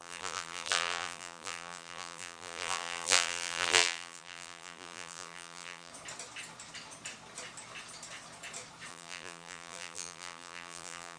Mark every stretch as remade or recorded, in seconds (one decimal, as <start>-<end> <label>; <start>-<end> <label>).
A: 0.0-5.9 remade; 5.9-8.9 recorded; 8.9-11.2 remade